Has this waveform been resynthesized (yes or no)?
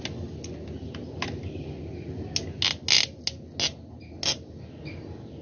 no